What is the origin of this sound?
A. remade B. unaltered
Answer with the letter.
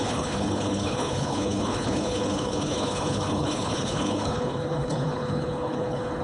A